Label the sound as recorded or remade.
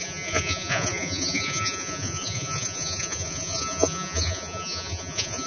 remade